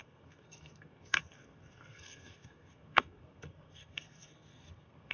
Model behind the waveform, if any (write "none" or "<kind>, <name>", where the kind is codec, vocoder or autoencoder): codec, SNAC